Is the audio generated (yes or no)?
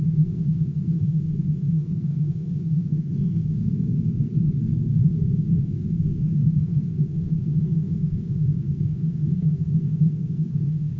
yes